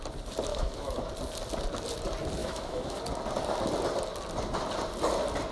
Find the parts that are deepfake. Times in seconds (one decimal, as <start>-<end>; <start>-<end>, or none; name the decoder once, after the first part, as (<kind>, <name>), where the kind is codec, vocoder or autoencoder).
0.5-1.1 (autoencoder, DAC-VAE); 2.4-3.0